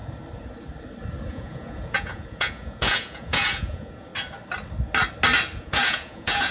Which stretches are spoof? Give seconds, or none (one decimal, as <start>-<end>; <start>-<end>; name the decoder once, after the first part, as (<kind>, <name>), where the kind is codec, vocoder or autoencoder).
1.3-4.1 (vocoder, Vocos); 5.6-6.5